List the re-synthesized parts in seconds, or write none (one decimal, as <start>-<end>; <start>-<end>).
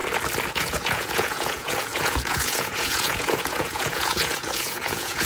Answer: 0.5-5.3